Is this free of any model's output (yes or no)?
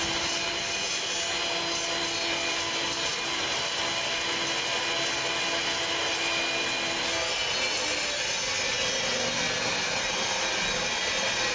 yes